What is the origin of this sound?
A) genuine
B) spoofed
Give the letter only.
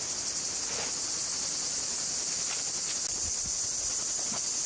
A